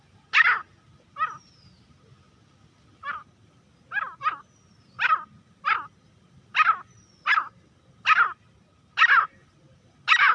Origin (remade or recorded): recorded